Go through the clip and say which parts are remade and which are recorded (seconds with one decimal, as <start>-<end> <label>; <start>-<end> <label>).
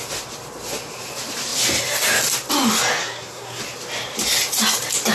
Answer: 0.0-3.0 recorded; 3.0-3.6 remade; 3.6-5.1 recorded